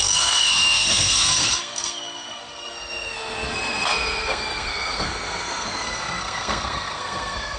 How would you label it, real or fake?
fake